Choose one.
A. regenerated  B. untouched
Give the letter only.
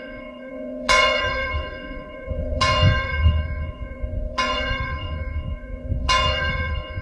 A